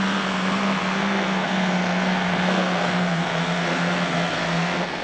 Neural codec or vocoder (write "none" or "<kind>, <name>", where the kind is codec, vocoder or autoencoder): codec, SNAC